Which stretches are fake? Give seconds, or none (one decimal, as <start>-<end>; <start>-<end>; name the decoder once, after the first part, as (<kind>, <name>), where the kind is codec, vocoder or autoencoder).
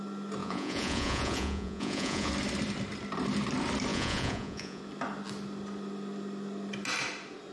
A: 0.4-2.3 (vocoder, Vocos); 3.9-4.8